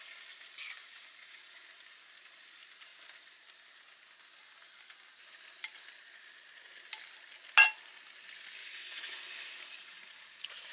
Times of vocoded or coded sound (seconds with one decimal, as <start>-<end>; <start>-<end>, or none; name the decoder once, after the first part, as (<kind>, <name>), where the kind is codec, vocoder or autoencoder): 0.8-1.6 (vocoder, Vocos); 8.6-10.7

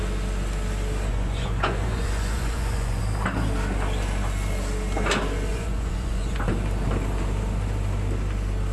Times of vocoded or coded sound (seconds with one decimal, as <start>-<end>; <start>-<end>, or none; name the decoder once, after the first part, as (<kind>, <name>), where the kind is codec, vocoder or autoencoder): 1.1-3.0 (vocoder, Vocos); 5.5-6.5